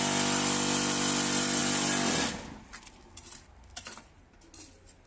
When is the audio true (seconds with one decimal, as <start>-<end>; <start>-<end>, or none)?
0.0-5.1